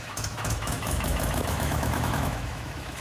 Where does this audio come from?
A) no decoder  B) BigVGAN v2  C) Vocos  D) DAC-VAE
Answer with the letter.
D